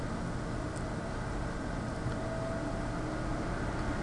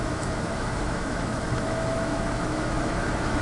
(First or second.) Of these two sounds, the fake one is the second